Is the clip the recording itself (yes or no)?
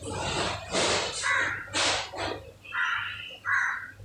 yes